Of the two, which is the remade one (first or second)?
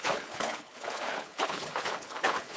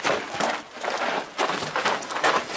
first